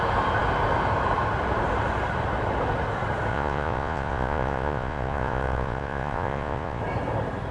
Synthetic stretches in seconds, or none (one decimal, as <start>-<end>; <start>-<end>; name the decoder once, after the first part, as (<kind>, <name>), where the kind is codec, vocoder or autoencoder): 3.3-6.8 (vocoder, Vocos)